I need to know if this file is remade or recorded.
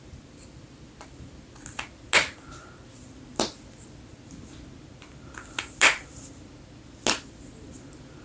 recorded